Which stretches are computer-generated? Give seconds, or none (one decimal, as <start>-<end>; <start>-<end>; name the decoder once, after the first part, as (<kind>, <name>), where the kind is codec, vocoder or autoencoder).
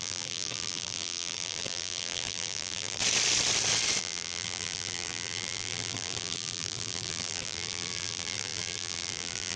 0.0-3.0 (vocoder, BigVGAN v2); 4.0-9.6